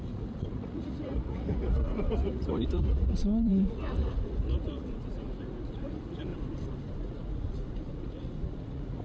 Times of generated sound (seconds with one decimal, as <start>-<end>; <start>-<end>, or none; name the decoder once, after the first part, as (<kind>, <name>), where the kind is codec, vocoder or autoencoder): 0.0-6.3 (vocoder, Vocos); 7.0-9.0